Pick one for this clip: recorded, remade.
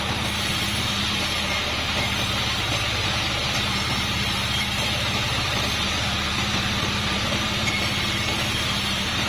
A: remade